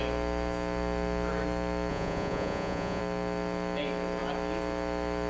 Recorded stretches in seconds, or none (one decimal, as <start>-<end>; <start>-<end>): 0.0-1.9; 3.0-5.3